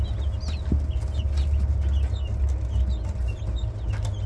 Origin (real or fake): real